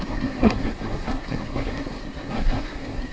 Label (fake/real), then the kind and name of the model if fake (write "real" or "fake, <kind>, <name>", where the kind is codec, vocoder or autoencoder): fake, codec, SNAC